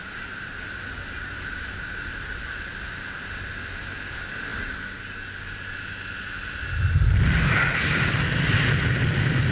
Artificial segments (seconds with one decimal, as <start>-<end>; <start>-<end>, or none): none